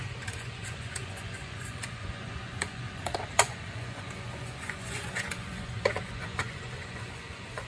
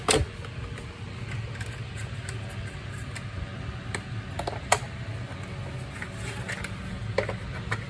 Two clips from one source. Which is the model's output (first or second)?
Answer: first